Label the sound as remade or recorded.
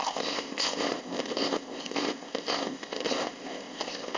remade